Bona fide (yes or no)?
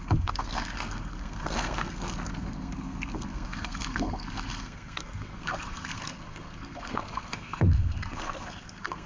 no